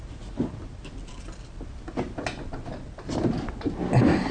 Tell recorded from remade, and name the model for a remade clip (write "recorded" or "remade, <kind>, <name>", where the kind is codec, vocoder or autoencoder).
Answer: recorded